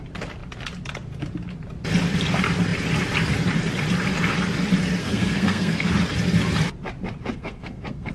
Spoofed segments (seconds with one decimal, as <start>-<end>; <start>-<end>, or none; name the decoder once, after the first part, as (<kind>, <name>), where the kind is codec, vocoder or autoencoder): 5.0-5.9 (codec, SNAC); 7.3-8.1